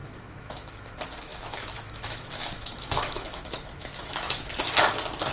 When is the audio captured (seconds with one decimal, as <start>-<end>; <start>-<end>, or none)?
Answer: 0.9-1.3; 4.5-5.3